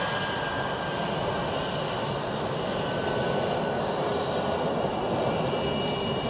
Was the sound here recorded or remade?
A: recorded